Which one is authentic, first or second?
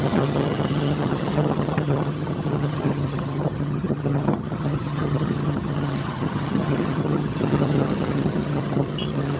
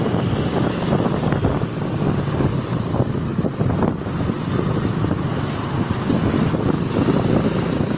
second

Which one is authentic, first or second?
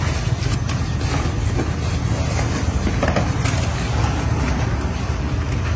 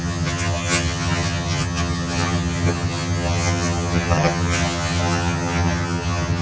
first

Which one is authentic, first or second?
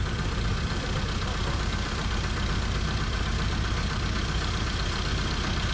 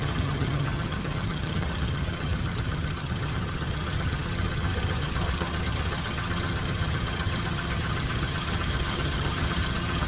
first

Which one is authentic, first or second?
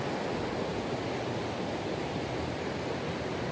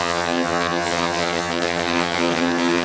first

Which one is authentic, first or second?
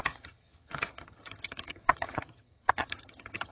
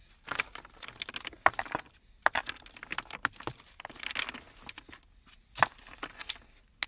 second